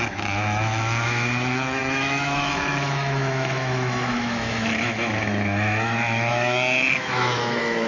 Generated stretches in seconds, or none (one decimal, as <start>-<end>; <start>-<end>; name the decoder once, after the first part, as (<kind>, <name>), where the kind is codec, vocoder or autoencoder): 0.0-7.9 (autoencoder, DAC-VAE)